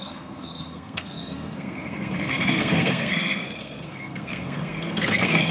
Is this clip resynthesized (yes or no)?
yes